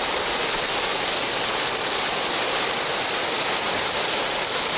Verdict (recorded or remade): recorded